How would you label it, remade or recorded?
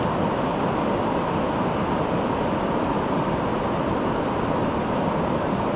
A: recorded